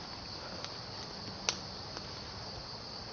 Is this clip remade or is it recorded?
recorded